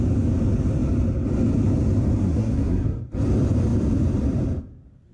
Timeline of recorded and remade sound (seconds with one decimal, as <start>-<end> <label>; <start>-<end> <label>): 0.0-2.2 recorded; 2.2-3.0 remade; 3.0-5.1 recorded